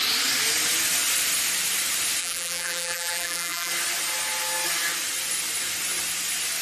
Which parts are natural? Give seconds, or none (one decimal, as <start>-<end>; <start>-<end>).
0.0-2.2; 3.7-6.6